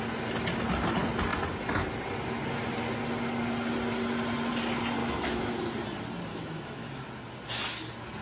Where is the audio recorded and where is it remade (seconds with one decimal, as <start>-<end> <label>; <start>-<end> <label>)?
0.0-5.0 recorded; 5.0-5.5 remade; 5.5-6.3 recorded; 6.3-7.1 remade; 7.1-8.2 recorded